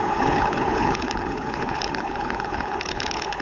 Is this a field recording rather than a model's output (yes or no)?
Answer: no